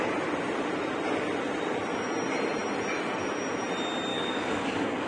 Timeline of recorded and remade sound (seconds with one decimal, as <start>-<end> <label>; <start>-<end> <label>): 0.0-4.1 recorded; 4.1-5.1 remade